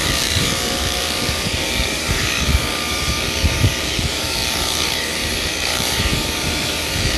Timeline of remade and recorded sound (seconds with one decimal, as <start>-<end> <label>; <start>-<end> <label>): 0.0-7.2 remade